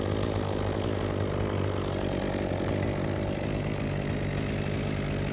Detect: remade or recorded recorded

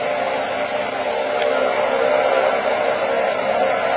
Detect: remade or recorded recorded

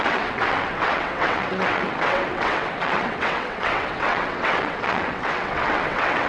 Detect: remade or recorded remade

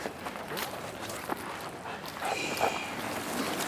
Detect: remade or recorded recorded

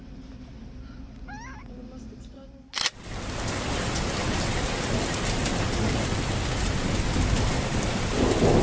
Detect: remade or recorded recorded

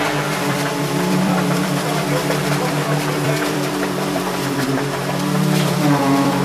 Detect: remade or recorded remade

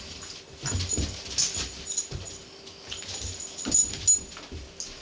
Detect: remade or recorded recorded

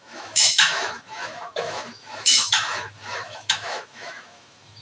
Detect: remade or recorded remade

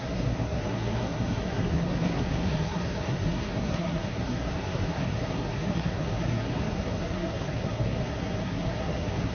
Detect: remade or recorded remade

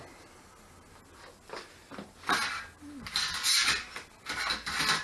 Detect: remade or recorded recorded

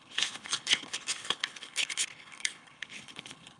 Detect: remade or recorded remade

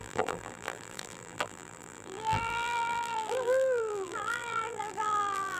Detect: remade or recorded remade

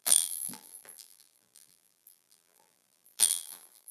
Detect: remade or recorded remade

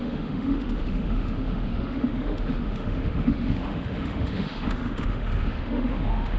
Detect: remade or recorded remade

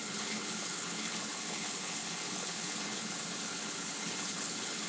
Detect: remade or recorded remade